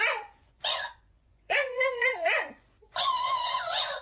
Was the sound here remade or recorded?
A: remade